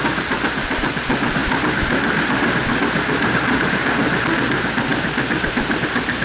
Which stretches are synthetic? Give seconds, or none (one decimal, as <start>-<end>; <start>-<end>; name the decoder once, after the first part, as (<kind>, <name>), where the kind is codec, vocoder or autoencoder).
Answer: 0.0-6.2 (vocoder, BigVGAN v2)

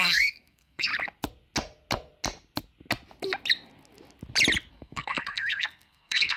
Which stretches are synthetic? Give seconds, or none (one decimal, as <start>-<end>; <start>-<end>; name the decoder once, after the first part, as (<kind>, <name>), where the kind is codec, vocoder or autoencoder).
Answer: 0.0-0.9 (codec, SNAC); 4.7-6.4